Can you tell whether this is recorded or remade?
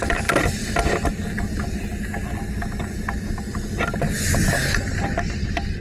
recorded